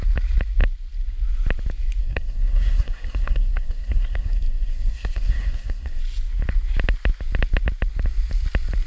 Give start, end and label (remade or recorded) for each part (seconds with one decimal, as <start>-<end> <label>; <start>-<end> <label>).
0.0-2.0 recorded; 2.0-6.0 remade; 6.0-8.9 recorded